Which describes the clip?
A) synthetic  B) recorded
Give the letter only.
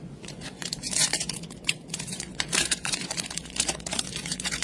A